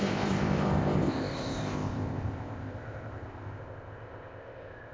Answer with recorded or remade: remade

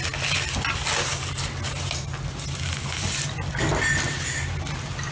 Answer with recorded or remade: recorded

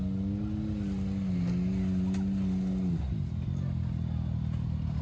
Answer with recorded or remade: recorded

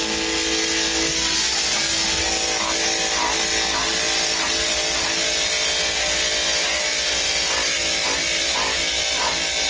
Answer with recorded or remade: recorded